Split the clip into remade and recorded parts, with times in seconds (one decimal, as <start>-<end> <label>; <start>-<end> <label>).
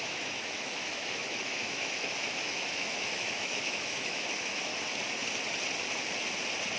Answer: 0.0-4.7 remade; 4.7-6.8 recorded